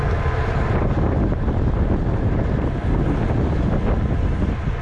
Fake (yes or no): no